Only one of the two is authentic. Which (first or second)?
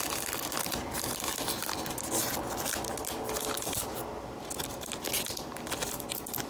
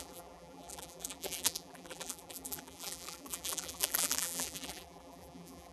first